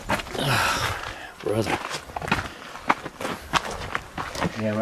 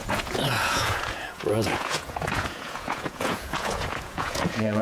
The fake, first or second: second